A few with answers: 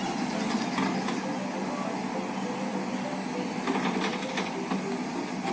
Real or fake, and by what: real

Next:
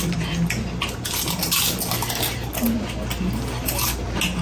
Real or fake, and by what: real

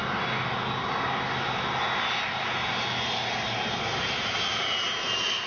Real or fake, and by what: real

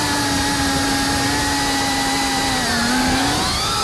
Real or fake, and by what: real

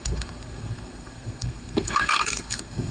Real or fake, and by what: fake, codec, SNAC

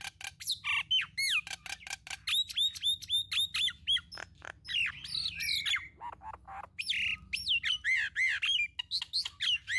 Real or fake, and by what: real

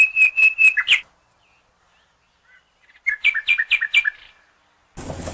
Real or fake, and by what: real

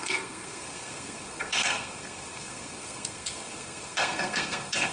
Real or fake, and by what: fake, codec, SNAC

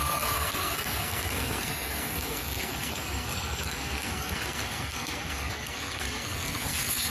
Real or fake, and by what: fake, codec, SNAC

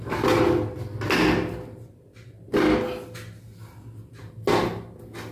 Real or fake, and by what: real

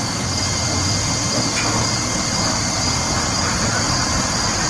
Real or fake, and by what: real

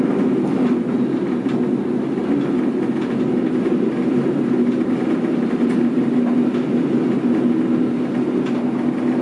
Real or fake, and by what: real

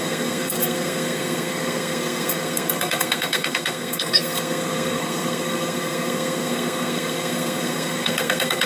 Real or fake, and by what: fake, codec, SNAC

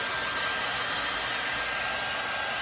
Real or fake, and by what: real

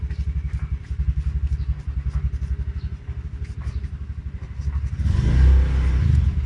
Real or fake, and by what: real